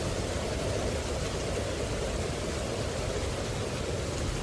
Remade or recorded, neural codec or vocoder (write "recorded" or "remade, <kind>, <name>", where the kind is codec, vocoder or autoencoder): recorded